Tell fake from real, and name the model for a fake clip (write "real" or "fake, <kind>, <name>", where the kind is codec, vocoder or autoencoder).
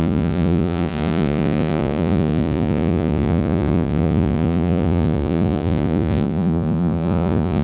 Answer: fake, vocoder, Vocos